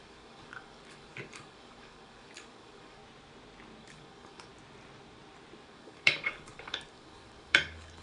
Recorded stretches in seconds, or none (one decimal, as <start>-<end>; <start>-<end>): 3.0-3.8; 4.5-5.6